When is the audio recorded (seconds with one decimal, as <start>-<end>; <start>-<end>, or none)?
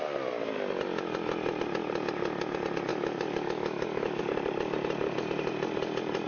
0.0-2.9; 4.2-6.3